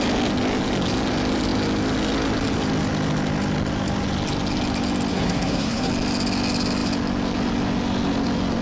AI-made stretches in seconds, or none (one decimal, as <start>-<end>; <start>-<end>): 5.1-5.9